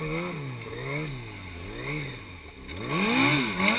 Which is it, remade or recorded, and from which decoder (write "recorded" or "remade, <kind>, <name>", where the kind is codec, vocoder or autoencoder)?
recorded